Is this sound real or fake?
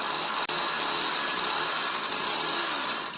real